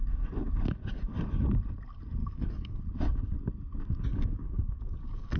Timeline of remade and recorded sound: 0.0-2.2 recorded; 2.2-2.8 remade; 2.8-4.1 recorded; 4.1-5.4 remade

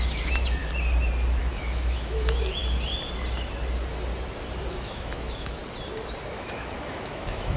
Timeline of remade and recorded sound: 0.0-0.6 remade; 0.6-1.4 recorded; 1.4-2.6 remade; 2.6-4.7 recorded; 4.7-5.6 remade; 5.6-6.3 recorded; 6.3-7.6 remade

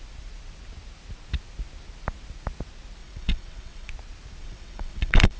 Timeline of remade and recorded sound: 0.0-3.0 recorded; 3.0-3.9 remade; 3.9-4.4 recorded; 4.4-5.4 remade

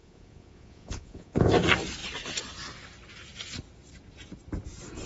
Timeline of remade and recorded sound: 0.0-1.5 remade; 1.5-5.1 recorded